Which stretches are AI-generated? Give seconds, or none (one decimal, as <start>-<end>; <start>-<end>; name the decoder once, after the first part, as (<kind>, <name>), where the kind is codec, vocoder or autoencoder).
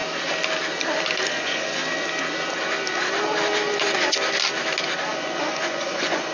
1.3-1.8 (vocoder, Vocos); 5.1-6.3